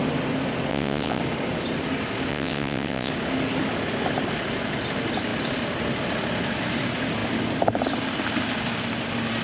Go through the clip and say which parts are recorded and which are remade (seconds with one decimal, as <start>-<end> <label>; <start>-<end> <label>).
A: 0.0-0.7 recorded; 0.7-1.2 remade; 1.2-2.3 recorded; 2.3-3.1 remade; 3.1-9.4 recorded